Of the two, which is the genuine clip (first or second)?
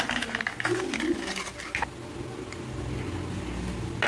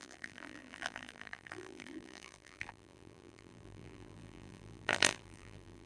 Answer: first